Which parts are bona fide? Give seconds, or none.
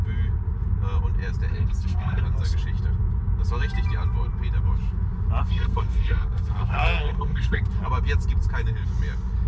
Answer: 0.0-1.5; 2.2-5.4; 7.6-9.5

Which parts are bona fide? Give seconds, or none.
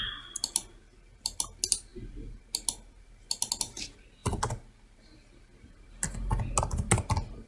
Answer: 0.0-7.5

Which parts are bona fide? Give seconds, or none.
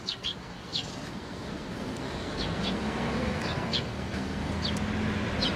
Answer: 4.6-5.6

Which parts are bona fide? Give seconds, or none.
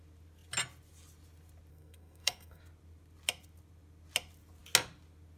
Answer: 0.0-1.7; 2.6-5.4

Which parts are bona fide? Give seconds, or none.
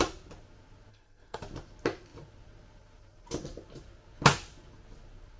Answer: 0.0-0.9; 1.4-5.4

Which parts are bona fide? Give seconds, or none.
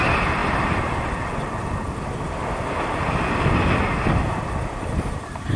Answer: 0.0-5.6